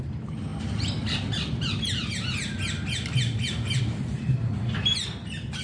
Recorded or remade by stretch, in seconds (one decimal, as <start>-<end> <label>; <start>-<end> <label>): 0.0-5.6 recorded

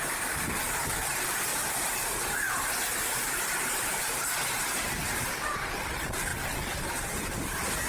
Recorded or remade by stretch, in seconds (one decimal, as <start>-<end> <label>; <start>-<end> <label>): 0.0-7.9 recorded

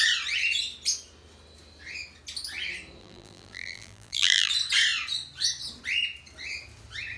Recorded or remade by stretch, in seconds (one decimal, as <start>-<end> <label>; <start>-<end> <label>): 0.0-3.0 recorded; 3.0-4.5 remade; 4.5-7.2 recorded